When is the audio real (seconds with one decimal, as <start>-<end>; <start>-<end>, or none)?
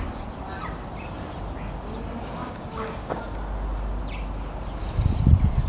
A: 0.0-2.4; 3.2-5.7